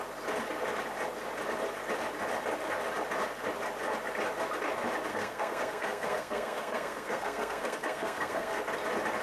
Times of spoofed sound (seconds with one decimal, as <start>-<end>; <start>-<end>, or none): 5.1-8.6